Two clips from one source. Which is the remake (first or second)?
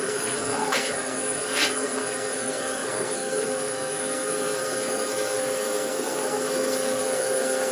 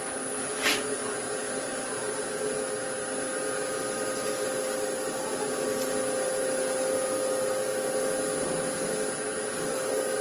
first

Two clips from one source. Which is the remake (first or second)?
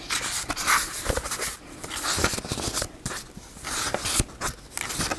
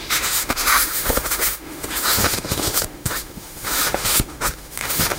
second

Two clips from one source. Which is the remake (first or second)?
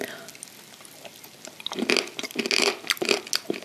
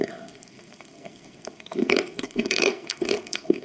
second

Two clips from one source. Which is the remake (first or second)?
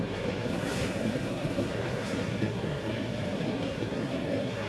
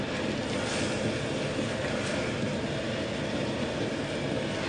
first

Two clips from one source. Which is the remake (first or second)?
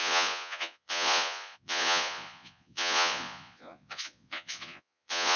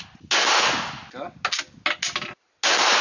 first